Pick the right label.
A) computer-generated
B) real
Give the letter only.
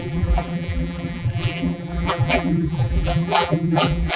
A